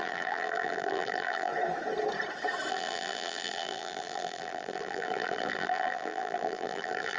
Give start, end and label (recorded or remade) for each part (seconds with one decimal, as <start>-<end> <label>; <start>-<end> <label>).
0.0-1.5 remade; 1.5-2.7 recorded; 2.7-7.2 remade